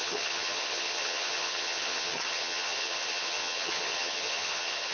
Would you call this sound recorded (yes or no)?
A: no